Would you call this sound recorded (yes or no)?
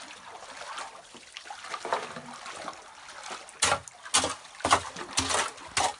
yes